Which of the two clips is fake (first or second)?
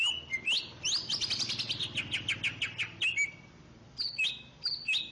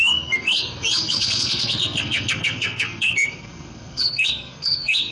second